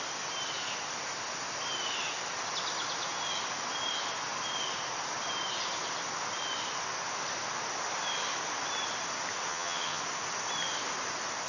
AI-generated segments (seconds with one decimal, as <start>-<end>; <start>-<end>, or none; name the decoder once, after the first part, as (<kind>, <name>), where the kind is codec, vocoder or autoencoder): 9.5-10.0 (vocoder, HiFi-GAN)